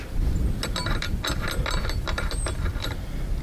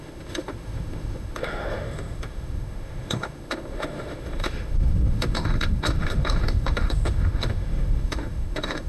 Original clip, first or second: first